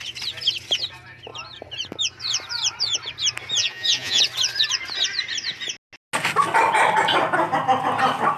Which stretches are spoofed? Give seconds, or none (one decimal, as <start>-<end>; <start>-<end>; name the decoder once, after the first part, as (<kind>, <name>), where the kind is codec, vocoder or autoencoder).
3.6-4.2 (vocoder, Vocos)